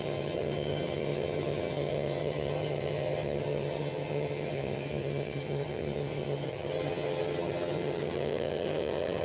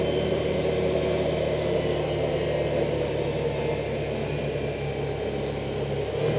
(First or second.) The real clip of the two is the second